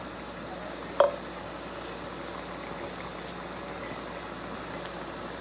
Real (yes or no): yes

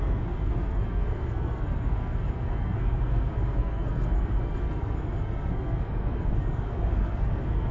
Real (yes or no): no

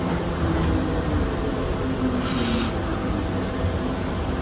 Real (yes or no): yes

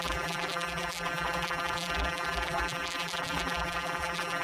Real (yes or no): no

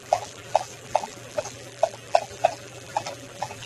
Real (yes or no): no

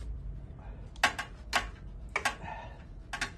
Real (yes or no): yes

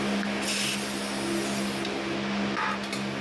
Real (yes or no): yes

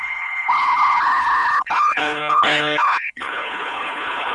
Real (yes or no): no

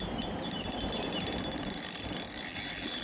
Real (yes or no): yes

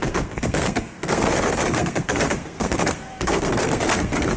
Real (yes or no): no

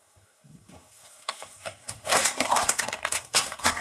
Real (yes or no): no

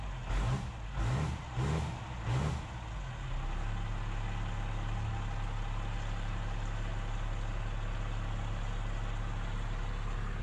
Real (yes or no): yes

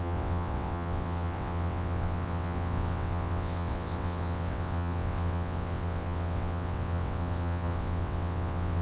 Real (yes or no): no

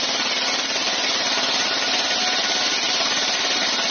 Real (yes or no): yes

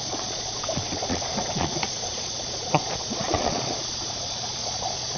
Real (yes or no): no